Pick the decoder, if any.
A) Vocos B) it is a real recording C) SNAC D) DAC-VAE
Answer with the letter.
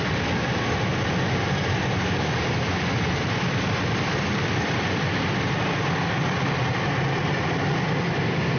B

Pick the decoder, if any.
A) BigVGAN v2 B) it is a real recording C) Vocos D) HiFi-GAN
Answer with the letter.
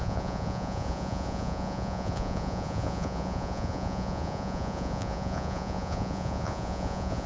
C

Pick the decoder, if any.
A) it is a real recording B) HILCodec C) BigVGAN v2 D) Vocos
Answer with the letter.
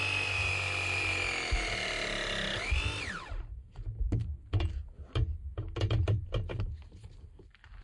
A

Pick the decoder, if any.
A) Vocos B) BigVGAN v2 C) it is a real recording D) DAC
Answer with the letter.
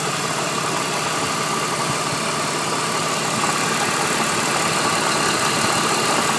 C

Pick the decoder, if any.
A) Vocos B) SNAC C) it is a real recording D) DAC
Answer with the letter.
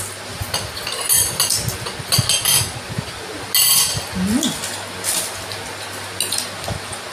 C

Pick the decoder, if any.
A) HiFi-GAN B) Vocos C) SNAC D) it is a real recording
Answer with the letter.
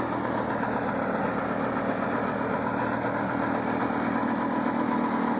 D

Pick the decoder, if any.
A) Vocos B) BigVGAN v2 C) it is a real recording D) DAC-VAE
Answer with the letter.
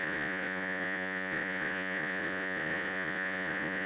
A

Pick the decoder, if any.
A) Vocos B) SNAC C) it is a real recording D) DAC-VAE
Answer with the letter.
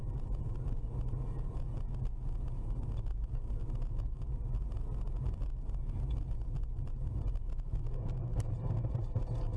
C